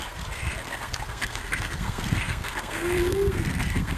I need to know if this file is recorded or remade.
remade